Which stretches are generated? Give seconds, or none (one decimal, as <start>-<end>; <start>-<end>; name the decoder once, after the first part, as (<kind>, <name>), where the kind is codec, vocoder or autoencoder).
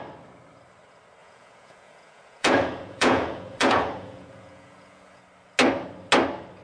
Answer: 1.2-5.2 (vocoder, Vocos)